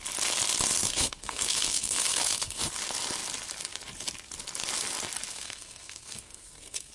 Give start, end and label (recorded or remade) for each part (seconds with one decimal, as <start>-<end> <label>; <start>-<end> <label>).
0.0-0.8 recorded; 0.8-2.7 remade; 2.7-5.3 recorded; 5.3-6.9 remade